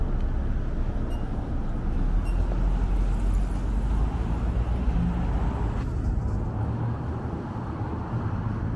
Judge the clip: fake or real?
real